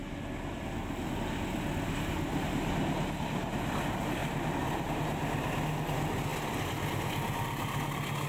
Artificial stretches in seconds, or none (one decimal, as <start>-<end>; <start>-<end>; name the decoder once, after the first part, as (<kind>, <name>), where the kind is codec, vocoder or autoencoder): 4.2-4.9 (vocoder, BigVGAN v2); 6.3-7.0